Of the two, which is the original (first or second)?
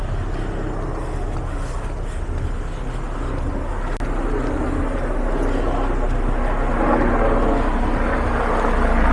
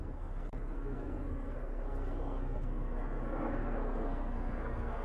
first